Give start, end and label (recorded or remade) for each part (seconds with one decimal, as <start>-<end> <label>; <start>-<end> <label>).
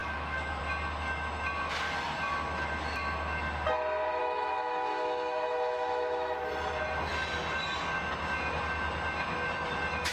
0.0-0.6 remade; 0.6-4.2 recorded; 4.2-6.5 remade; 6.5-10.1 recorded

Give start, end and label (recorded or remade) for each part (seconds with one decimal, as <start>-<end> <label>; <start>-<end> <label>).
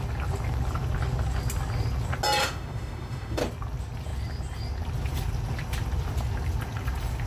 0.0-2.4 recorded; 2.4-3.4 remade; 3.4-7.3 recorded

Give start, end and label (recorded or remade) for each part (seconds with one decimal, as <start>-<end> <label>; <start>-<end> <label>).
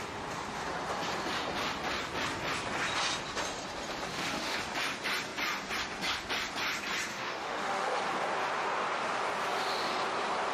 0.0-4.1 recorded; 4.1-4.6 remade; 4.6-7.1 recorded; 7.1-8.0 remade; 8.0-10.5 recorded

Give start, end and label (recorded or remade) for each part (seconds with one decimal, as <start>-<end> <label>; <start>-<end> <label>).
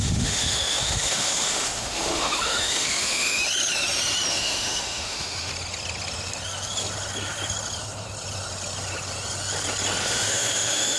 0.0-3.4 remade; 3.4-4.3 recorded; 4.3-5.5 remade; 5.5-10.0 recorded; 10.0-11.0 remade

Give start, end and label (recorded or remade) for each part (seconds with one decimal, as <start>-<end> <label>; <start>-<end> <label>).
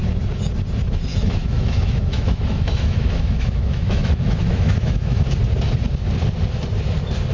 0.0-1.1 recorded; 1.1-5.3 remade; 5.3-7.3 recorded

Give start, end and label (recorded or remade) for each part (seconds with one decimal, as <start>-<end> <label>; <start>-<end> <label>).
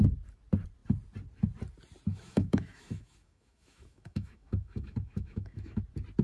0.0-2.1 recorded; 2.1-5.8 remade; 5.8-6.2 recorded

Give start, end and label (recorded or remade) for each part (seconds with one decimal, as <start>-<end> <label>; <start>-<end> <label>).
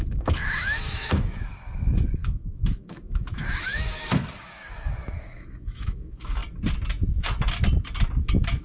0.0-6.4 remade; 6.4-8.2 recorded; 8.2-8.6 remade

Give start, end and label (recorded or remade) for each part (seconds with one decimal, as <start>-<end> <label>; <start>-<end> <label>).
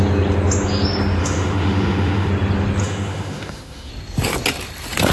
0.0-1.2 recorded; 1.2-2.3 remade; 2.3-2.8 recorded; 2.8-3.9 remade; 3.9-5.1 recorded